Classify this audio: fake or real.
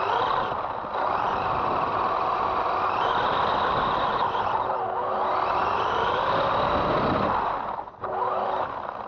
real